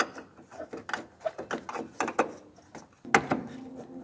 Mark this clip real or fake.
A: real